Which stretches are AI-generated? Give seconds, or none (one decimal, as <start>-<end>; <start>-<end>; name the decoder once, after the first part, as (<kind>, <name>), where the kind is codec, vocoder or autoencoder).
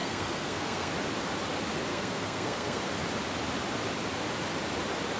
0.0-0.9 (codec, SNAC); 1.9-2.8